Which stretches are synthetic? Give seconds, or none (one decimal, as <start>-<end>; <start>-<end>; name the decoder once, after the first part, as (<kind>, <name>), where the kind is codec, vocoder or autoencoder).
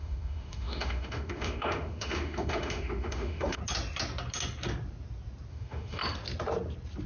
0.0-3.6 (autoencoder, DAC-VAE); 5.5-6.0